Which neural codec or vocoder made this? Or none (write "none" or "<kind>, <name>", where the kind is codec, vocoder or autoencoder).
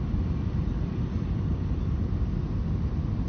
none